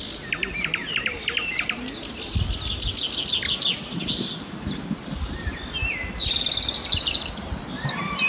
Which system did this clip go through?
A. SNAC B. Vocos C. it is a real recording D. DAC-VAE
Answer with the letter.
C